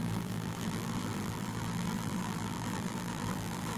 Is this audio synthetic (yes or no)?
yes